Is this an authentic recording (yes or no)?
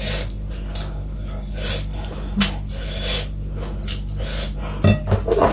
yes